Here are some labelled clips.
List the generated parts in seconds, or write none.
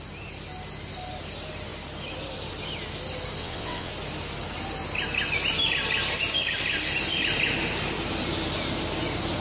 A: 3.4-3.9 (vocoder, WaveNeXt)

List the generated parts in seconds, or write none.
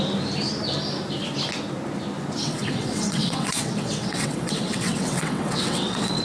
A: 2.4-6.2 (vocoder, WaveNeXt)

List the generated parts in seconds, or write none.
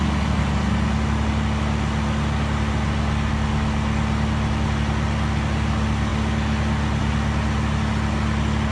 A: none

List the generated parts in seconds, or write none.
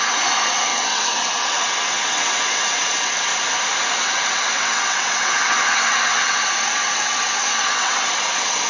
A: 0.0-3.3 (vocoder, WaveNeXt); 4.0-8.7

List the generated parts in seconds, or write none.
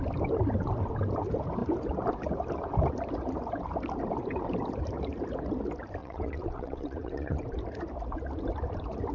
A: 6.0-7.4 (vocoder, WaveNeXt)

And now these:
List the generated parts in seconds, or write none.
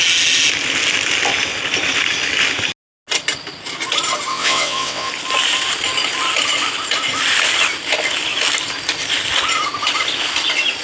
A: 4.3-5.1 (vocoder, WaveNeXt)